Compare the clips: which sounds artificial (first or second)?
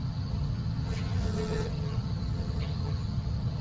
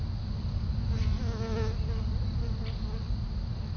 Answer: first